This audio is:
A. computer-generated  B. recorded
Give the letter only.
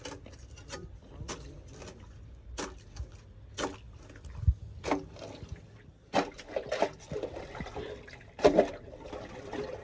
B